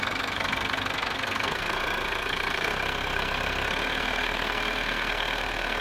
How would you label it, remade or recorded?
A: remade